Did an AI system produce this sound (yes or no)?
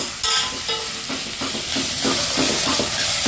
no